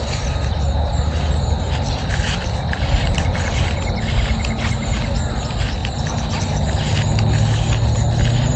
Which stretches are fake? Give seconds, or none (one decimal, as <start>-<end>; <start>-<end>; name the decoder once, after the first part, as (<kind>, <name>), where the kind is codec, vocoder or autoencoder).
none